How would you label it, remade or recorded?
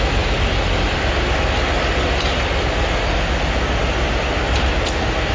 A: recorded